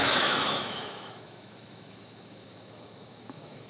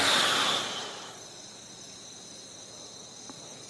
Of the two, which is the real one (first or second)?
second